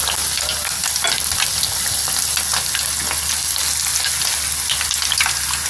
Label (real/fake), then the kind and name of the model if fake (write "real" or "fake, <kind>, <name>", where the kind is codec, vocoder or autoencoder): real